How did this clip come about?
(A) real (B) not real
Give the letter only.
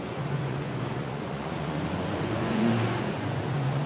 B